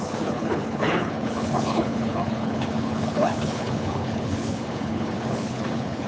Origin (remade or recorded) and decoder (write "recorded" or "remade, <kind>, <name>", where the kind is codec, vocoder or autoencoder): remade, codec, HILCodec